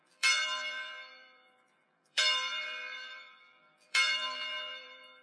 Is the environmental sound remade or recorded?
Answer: remade